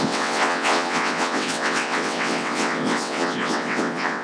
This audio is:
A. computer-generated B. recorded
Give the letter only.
A